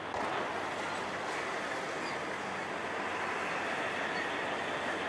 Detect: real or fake real